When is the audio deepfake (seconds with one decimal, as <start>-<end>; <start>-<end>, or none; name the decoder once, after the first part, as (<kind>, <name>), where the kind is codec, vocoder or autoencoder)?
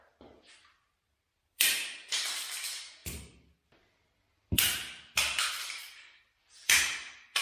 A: 0.6-2.5 (vocoder, BigVGAN v2)